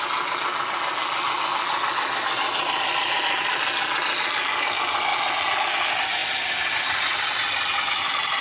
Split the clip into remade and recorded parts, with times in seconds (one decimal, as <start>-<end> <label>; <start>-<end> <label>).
0.0-8.4 recorded